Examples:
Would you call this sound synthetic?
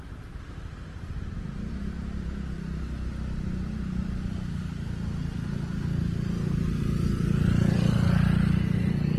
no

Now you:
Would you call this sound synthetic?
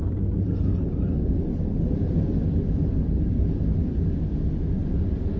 no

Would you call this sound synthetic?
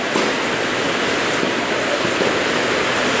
no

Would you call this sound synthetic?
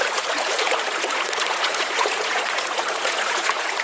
yes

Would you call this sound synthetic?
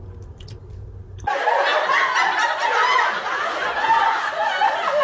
no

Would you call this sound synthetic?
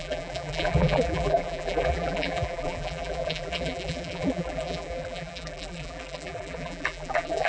yes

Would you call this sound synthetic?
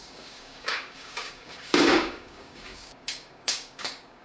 yes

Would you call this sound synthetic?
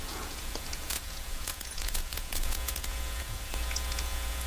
yes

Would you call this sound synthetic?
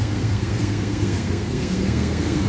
yes